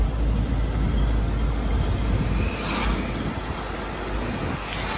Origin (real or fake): real